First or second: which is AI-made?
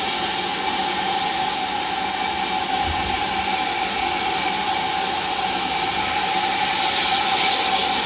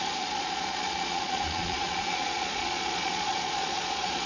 second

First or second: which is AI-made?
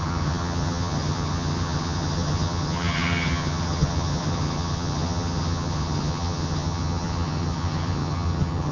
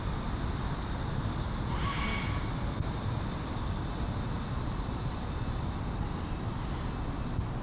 first